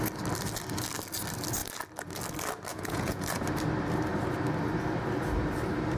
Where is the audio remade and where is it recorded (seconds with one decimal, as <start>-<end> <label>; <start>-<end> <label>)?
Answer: 0.0-2.7 recorded; 2.7-3.2 remade; 3.2-6.0 recorded